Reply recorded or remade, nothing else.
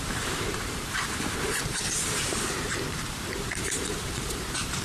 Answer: remade